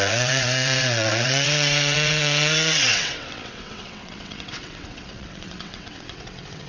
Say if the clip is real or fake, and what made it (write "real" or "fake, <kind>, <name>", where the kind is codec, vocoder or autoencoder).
fake, vocoder, WaveNeXt